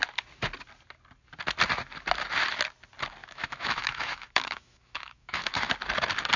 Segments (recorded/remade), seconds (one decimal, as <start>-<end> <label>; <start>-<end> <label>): 0.0-3.2 recorded; 3.2-5.7 remade; 5.7-6.4 recorded